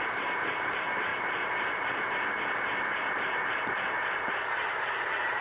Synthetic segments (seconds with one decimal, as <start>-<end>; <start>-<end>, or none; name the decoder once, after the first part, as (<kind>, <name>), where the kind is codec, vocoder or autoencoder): 0.0-1.1 (vocoder, BigVGAN v2); 4.3-5.4